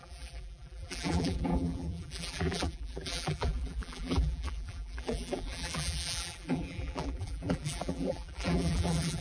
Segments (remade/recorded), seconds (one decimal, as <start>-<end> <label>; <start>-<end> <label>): 0.0-9.2 remade